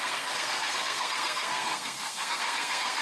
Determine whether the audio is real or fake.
fake